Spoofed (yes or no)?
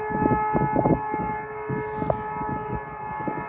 no